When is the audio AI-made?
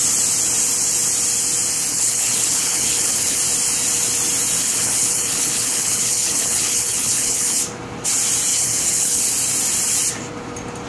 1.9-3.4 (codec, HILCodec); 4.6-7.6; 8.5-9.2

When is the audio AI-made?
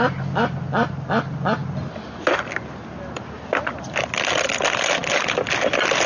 none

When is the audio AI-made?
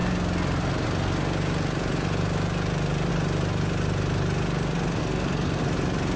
5.0-5.6 (codec, SNAC)